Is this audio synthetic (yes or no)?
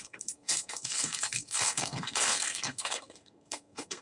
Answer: yes